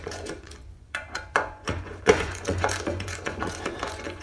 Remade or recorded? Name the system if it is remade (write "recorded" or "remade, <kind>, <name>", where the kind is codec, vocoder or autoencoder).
remade, vocoder, Vocos